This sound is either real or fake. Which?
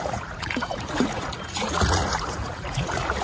fake